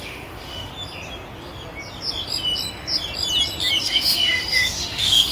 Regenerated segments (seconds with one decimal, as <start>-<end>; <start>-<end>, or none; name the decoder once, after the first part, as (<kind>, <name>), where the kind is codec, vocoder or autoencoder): 0.0-0.7 (autoencoder, DAC-VAE); 3.8-5.3